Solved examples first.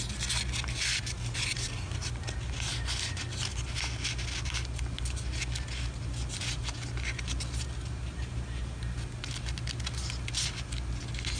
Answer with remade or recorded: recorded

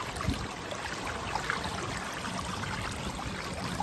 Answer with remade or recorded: recorded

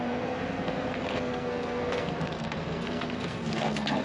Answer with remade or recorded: remade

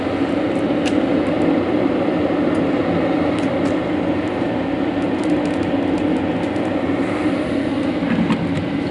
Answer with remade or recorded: recorded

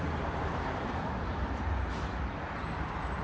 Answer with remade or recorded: remade